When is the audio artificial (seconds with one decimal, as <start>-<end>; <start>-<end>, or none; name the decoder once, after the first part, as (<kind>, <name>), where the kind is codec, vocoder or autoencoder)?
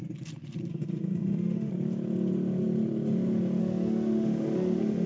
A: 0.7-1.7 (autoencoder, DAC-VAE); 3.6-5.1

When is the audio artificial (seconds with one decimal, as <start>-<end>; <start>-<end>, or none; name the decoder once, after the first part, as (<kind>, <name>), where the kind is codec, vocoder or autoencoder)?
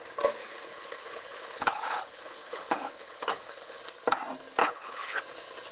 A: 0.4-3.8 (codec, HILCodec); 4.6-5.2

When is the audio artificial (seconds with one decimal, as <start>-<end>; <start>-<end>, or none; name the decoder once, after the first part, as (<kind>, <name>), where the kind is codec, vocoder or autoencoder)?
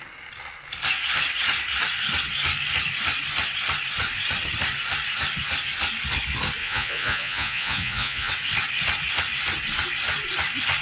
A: 6.6-8.3 (vocoder, Vocos)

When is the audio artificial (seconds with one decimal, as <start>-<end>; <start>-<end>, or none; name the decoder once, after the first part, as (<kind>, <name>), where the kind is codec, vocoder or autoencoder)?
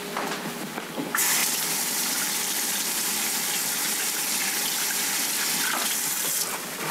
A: none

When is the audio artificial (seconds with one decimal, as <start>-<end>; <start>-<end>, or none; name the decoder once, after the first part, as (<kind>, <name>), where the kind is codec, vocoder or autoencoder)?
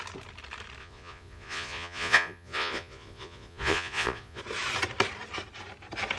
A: 0.8-4.4 (vocoder, Vocos)